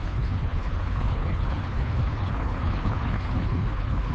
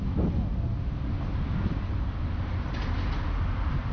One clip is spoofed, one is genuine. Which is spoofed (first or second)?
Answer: first